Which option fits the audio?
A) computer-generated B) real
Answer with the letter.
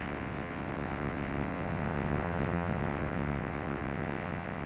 A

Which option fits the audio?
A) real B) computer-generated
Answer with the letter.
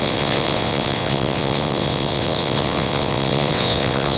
B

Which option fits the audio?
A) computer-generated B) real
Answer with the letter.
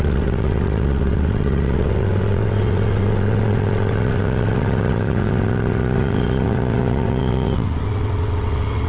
A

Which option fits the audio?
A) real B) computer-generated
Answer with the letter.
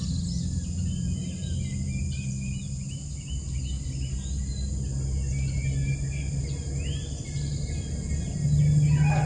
A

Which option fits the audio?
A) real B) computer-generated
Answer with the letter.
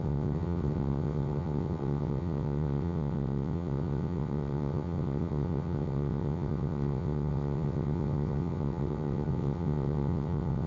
B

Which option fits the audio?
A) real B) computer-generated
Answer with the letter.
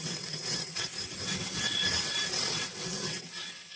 B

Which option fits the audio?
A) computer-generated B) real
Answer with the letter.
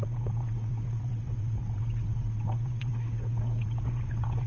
A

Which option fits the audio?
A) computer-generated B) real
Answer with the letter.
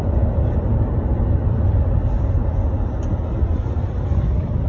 B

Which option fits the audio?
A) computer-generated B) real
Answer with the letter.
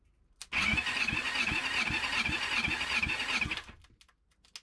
B